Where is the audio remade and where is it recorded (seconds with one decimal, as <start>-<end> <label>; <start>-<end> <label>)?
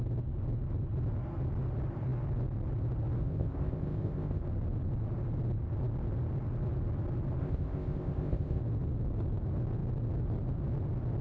0.0-3.2 recorded; 3.2-4.4 remade; 4.4-7.4 recorded; 7.4-8.6 remade; 8.6-11.2 recorded